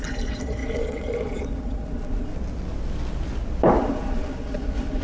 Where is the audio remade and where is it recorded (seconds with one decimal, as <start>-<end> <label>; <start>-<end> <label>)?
0.0-2.3 remade; 2.3-3.8 recorded; 3.8-5.0 remade